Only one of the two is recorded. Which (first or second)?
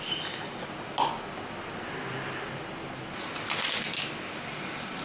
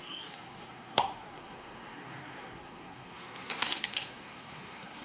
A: first